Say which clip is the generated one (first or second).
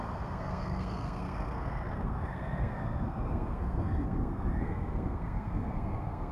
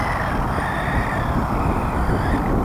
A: first